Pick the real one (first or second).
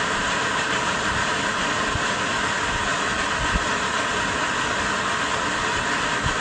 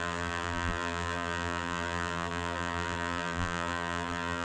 first